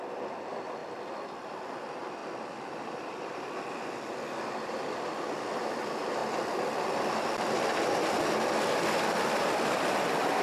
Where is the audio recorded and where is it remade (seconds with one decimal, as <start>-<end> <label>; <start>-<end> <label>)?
0.0-6.2 remade; 6.2-9.6 recorded; 9.6-10.4 remade